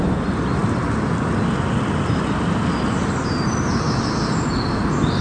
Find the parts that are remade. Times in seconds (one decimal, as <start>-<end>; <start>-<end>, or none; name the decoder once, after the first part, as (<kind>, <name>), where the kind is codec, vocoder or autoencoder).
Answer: none